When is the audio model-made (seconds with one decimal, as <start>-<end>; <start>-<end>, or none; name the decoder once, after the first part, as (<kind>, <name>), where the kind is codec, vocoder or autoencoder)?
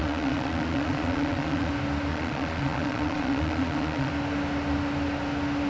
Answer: 0.0-1.7 (vocoder, Vocos); 2.1-4.1